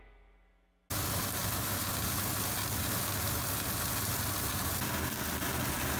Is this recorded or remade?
recorded